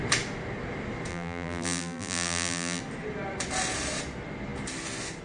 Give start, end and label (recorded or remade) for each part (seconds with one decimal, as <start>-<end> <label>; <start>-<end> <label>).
0.0-1.1 recorded; 1.1-2.8 remade; 2.8-5.2 recorded